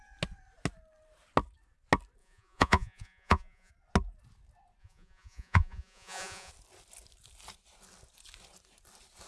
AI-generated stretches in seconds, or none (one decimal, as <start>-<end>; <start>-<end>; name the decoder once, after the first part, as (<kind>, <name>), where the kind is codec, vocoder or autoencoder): 2.2-3.7 (vocoder, Vocos); 4.8-6.5